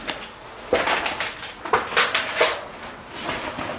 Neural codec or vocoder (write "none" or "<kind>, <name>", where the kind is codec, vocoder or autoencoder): none